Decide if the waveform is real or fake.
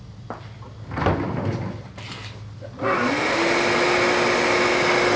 real